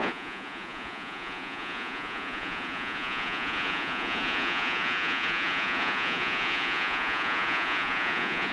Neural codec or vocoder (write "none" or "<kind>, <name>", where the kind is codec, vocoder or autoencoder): vocoder, Vocos